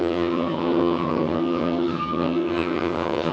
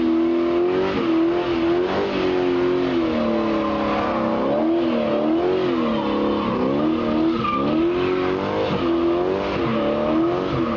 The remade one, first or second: first